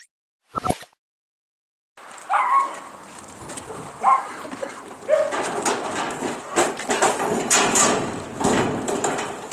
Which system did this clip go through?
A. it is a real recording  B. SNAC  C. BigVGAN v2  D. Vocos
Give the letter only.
A